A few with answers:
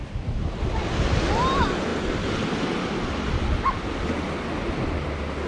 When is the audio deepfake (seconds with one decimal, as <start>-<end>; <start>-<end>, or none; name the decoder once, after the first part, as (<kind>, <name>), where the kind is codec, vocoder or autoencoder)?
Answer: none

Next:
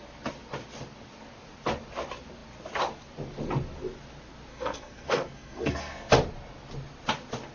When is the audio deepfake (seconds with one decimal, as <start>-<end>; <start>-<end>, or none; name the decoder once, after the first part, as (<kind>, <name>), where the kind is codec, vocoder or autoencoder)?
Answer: 4.5-6.1 (codec, SNAC)

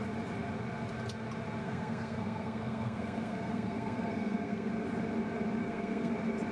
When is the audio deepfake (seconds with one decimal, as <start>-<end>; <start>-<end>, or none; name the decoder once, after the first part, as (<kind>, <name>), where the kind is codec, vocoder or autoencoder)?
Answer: 1.6-4.7 (codec, SNAC); 5.6-6.1